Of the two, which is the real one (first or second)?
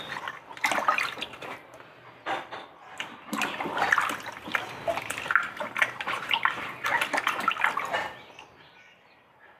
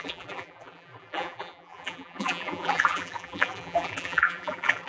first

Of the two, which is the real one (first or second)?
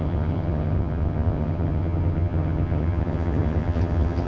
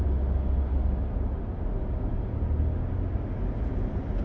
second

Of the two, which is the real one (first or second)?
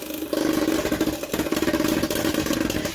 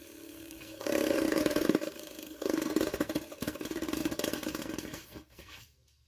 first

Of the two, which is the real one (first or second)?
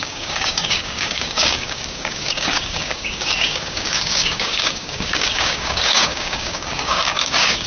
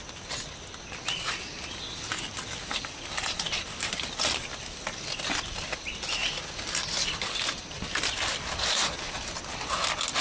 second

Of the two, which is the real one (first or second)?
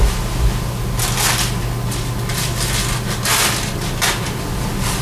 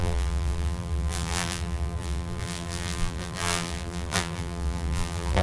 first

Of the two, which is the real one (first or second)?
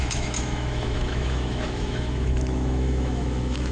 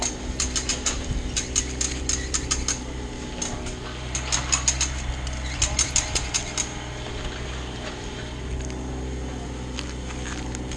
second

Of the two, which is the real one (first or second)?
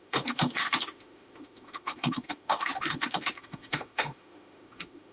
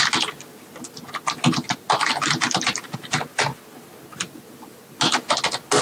second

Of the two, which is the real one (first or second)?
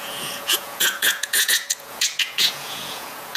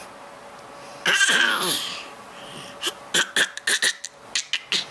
second